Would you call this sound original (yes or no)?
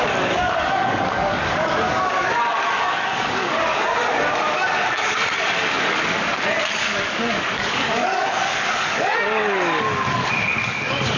no